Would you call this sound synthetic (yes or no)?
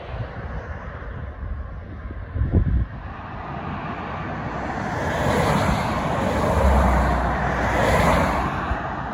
no